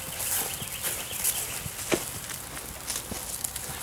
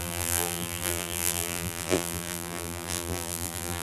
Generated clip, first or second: second